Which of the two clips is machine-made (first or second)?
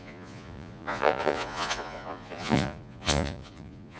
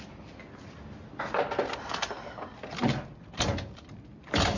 first